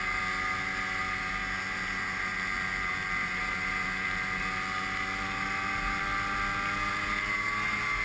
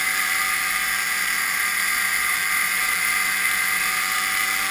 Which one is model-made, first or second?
second